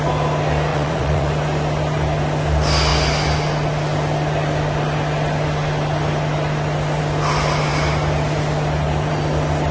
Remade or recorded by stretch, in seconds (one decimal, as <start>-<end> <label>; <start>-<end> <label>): 0.0-0.7 recorded; 0.7-1.3 remade; 1.3-9.7 recorded